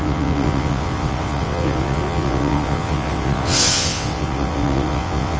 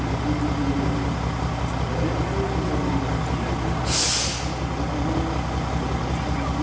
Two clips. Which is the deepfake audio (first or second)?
first